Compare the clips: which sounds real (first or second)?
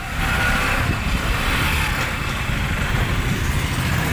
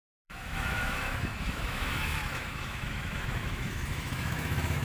first